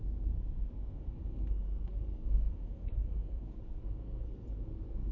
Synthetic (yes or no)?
yes